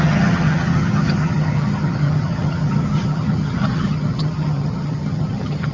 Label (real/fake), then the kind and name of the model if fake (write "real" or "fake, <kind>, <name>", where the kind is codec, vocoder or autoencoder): fake, vocoder, HiFi-GAN